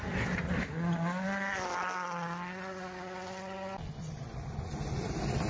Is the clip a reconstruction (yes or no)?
no